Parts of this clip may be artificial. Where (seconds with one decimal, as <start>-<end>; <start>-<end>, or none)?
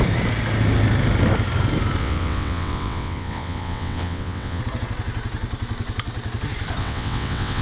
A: 2.0-4.6; 6.8-7.6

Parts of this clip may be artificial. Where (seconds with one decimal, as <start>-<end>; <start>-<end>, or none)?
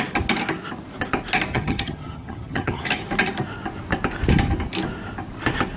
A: 1.5-2.8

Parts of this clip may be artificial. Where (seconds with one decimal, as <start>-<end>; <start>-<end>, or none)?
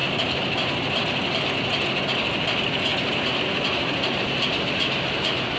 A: none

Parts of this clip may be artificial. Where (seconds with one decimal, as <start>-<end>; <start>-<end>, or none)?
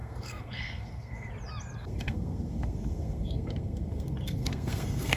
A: 0.0-1.3; 1.8-5.2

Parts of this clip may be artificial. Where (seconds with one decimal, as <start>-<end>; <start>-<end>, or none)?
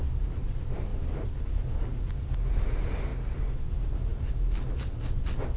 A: none